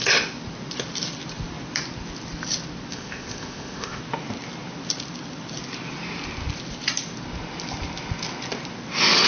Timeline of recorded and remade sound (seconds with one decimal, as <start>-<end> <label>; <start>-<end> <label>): 0.0-2.9 recorded; 2.9-4.0 remade; 4.0-9.3 recorded